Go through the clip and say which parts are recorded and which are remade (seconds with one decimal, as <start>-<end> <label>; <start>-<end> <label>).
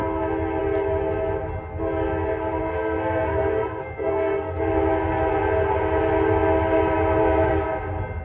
0.0-2.6 recorded; 2.6-4.6 remade; 4.6-8.2 recorded